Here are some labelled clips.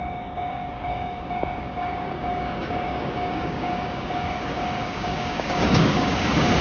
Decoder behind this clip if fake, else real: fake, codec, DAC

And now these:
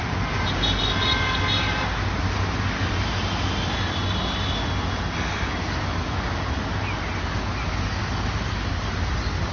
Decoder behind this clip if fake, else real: real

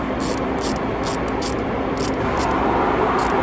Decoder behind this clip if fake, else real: real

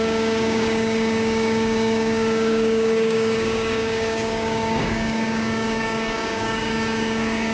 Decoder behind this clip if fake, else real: fake, codec, DAC